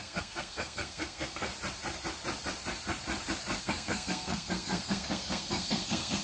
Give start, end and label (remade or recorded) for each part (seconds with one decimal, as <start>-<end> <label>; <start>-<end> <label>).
0.0-1.5 remade; 1.5-3.6 recorded; 3.6-6.2 remade